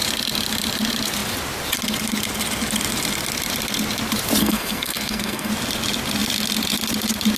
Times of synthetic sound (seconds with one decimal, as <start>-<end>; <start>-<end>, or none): 4.4-5.5